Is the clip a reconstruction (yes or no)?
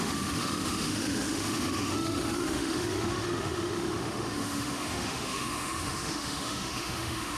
yes